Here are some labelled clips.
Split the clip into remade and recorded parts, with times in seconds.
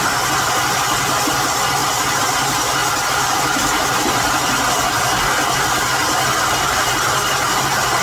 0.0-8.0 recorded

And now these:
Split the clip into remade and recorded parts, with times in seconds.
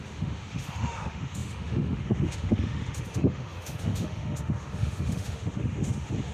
0.0-6.3 remade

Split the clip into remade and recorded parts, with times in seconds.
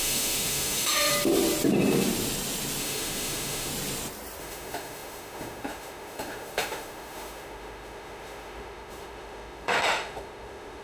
0.0-1.1 remade; 1.1-2.8 recorded; 2.8-3.7 remade; 3.7-4.4 recorded; 4.4-10.8 remade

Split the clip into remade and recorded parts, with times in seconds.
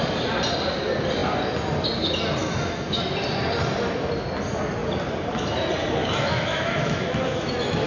0.0-2.4 recorded; 2.4-3.0 remade; 3.0-6.0 recorded; 6.0-7.9 remade